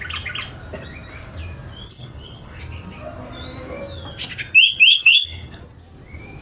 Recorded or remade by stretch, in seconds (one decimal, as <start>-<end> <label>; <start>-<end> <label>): 0.0-1.9 recorded; 1.9-2.6 remade; 2.6-4.9 recorded; 4.9-5.6 remade; 5.6-6.4 recorded